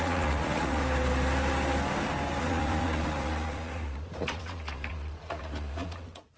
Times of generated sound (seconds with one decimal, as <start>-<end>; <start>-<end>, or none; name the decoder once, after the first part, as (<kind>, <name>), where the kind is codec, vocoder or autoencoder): 0.0-0.8 (vocoder, Vocos); 2.4-6.4